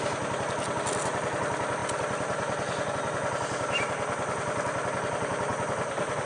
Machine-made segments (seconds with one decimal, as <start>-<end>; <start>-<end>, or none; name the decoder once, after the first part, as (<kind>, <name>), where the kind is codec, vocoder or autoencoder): 5.5-6.3 (vocoder, BigVGAN v2)